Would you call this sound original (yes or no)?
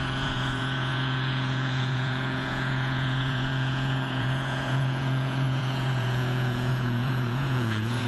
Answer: no